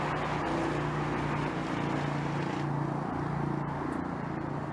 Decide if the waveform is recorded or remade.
recorded